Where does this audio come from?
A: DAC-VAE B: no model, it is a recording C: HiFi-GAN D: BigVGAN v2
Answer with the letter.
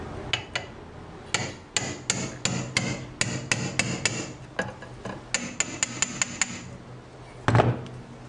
B